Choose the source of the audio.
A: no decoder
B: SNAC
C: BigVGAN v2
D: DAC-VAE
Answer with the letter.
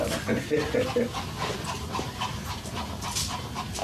A